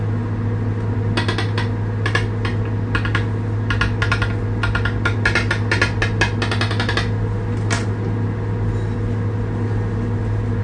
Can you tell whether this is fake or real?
real